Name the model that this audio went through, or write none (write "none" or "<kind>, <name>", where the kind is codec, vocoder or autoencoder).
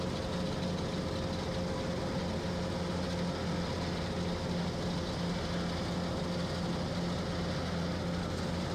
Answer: none